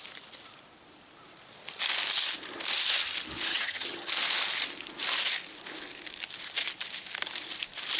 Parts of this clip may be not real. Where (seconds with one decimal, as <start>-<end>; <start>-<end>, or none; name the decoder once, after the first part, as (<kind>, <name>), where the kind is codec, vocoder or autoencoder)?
3.5-4.1 (vocoder, HiFi-GAN)